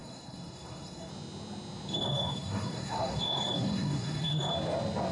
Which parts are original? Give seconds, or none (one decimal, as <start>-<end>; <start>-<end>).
1.1-1.9; 4.5-5.1